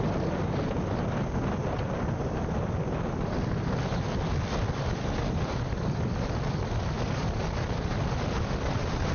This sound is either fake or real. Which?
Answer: real